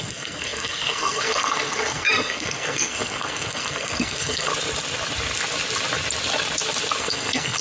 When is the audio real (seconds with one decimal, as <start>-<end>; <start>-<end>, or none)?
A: 4.5-7.0